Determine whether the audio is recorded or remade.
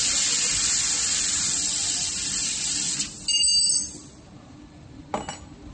recorded